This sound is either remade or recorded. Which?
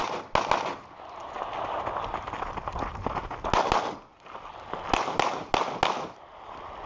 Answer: recorded